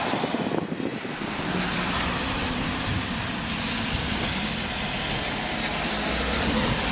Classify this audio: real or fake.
fake